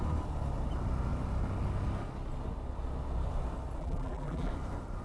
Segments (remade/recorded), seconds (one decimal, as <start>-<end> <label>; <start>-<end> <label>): 0.0-3.8 recorded; 3.8-4.5 remade; 4.5-5.0 recorded